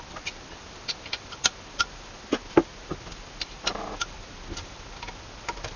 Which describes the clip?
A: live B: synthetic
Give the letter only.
B